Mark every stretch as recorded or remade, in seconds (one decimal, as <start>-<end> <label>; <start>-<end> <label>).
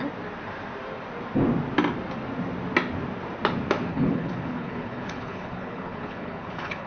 0.0-3.9 recorded; 3.9-6.9 remade